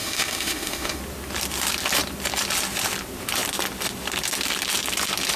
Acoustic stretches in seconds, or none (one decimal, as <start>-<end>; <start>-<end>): 1.0-5.4